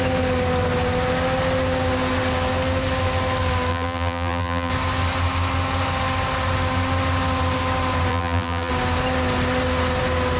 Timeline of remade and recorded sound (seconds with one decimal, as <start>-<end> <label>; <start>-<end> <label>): 0.0-3.7 recorded; 3.7-4.7 remade; 4.7-8.1 recorded; 8.1-8.7 remade; 8.7-10.4 recorded